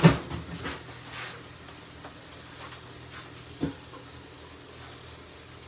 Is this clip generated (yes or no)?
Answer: no